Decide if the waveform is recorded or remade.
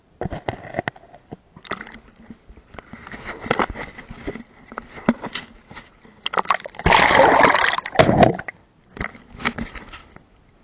recorded